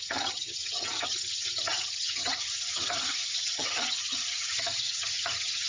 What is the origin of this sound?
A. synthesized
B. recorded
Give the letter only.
A